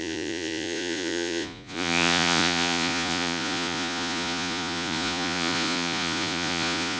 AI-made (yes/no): yes